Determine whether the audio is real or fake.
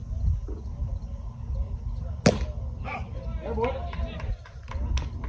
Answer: real